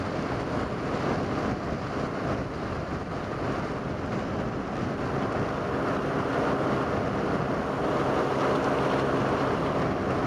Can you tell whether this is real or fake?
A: real